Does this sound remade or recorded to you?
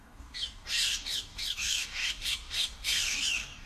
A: remade